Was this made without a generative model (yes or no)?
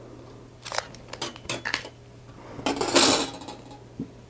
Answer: yes